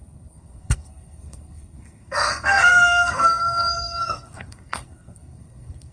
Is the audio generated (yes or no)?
yes